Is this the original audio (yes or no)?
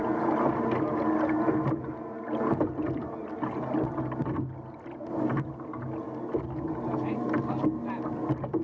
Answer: yes